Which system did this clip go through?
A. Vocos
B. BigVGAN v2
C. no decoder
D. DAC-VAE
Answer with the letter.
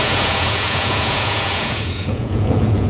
A